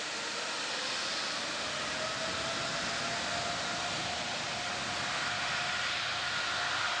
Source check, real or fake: real